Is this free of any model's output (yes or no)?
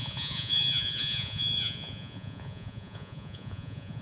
no